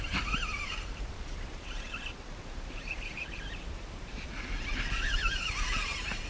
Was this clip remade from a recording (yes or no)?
yes